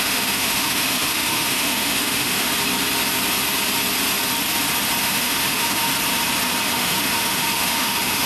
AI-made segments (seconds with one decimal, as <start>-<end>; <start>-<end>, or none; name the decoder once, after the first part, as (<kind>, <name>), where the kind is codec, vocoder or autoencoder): 0.0-2.5 (autoencoder, DAC-VAE); 5.0-5.9; 6.7-8.3